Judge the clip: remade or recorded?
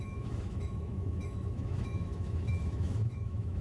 remade